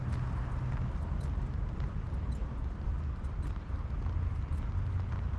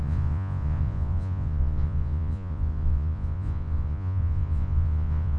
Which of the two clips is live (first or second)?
first